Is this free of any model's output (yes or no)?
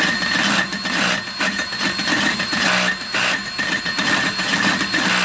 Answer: yes